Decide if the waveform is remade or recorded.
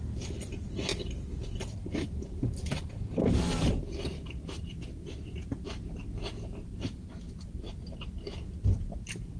recorded